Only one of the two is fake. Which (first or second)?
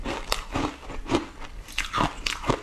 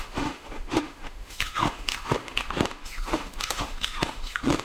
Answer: second